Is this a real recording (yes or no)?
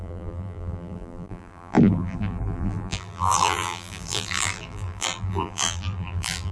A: no